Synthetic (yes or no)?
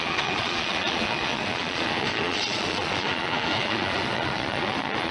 yes